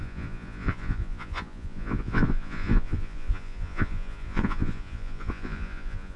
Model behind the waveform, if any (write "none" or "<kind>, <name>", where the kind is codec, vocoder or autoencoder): vocoder, Vocos